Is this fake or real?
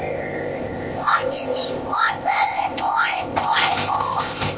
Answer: fake